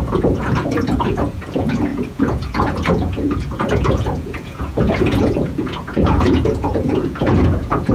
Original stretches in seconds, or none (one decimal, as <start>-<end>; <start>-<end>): none